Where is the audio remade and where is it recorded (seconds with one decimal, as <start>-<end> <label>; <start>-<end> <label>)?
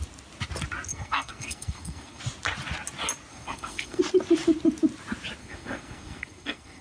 0.0-0.9 recorded; 0.9-2.2 remade; 2.2-3.3 recorded; 3.3-4.0 remade; 4.0-5.4 recorded; 5.4-6.8 remade